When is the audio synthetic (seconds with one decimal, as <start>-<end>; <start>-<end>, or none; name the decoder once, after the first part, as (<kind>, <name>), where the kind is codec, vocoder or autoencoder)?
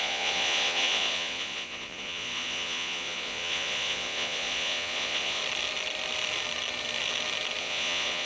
0.0-5.4 (vocoder, Vocos); 7.6-8.3